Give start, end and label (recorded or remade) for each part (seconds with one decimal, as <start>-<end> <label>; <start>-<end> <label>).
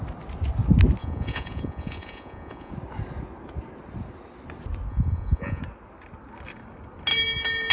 0.0-1.0 recorded; 1.0-2.7 remade; 2.7-4.9 recorded; 4.9-5.6 remade; 5.6-7.7 recorded